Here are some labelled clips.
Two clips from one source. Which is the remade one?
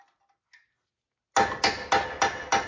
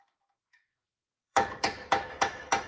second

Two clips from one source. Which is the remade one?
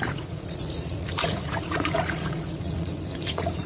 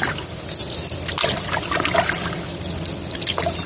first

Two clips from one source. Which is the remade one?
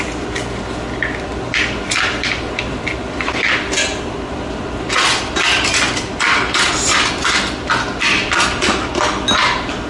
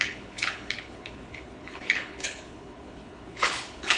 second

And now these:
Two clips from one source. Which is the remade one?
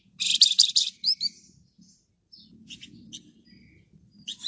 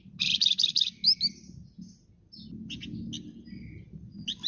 first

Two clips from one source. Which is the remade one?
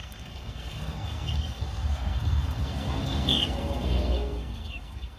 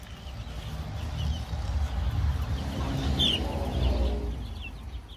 first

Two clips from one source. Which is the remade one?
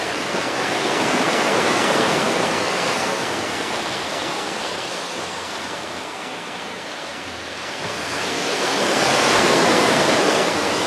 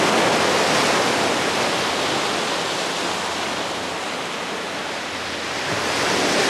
first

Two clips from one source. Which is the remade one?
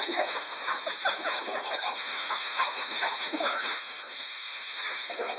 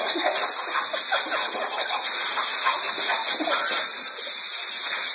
first